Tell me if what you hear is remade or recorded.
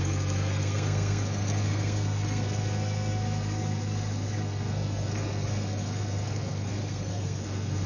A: remade